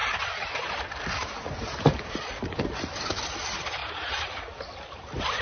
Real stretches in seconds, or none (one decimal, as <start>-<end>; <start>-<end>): 0.0-5.4